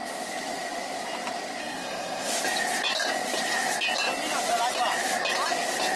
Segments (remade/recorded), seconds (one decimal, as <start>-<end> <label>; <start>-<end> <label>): 0.0-1.6 recorded; 1.6-2.3 remade; 2.3-6.0 recorded

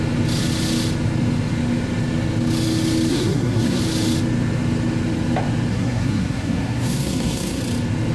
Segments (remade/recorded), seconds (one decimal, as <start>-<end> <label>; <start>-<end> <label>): 0.0-3.1 recorded; 3.1-3.8 remade; 3.8-5.7 recorded; 5.7-7.6 remade; 7.6-8.1 recorded

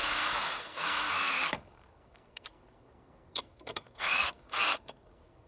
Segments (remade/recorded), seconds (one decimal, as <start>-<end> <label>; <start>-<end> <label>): 0.0-5.5 remade

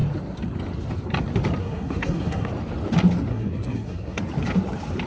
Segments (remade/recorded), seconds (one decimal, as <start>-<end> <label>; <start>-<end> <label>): 0.0-1.6 recorded; 1.6-2.5 remade; 2.5-3.3 recorded; 3.3-4.2 remade; 4.2-5.1 recorded

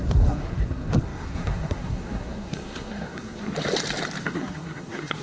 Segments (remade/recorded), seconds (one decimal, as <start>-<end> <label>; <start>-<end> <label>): 0.0-3.5 remade; 3.5-4.2 recorded; 4.2-5.2 remade

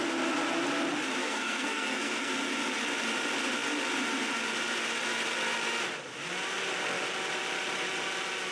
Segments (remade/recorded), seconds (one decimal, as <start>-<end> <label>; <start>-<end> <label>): 0.0-1.2 recorded; 1.2-2.3 remade; 2.3-8.5 recorded

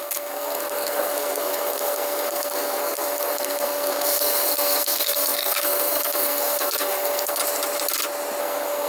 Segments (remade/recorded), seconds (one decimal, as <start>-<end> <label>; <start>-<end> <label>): 0.0-7.4 remade; 7.4-8.4 recorded; 8.4-8.9 remade

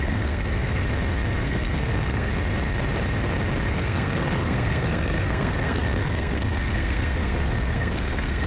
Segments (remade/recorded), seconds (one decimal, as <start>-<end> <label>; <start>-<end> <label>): 0.0-0.8 remade; 0.8-1.4 recorded; 1.4-2.3 remade; 2.3-3.7 recorded; 3.7-8.5 remade